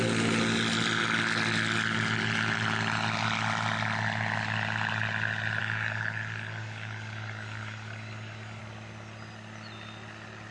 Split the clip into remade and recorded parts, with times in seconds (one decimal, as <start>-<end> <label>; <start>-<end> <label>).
0.0-5.6 recorded; 5.6-8.6 remade; 8.6-10.5 recorded